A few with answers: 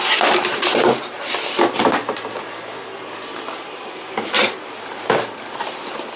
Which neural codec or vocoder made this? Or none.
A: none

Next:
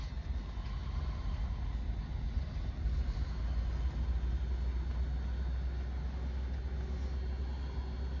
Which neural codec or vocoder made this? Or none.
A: none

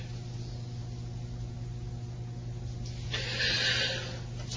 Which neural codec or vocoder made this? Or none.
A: none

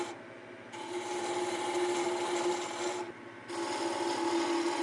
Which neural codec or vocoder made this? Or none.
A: none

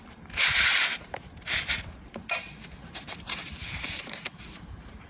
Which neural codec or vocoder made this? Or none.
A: vocoder, BigVGAN v2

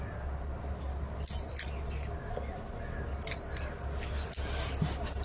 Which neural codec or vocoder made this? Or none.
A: none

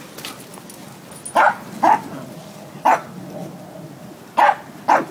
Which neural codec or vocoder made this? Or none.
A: none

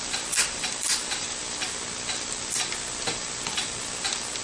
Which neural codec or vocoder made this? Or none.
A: none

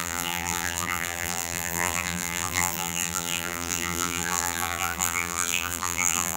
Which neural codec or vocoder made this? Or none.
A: vocoder, BigVGAN v2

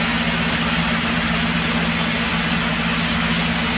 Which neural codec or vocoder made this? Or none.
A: none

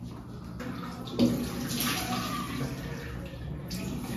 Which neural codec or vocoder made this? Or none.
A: none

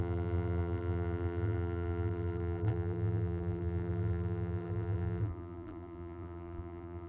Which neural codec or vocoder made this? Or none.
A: vocoder, BigVGAN v2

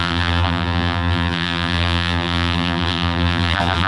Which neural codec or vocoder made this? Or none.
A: vocoder, BigVGAN v2